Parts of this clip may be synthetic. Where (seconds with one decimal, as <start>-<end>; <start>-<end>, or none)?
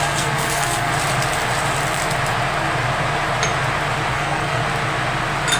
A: 0.0-0.9; 4.1-4.6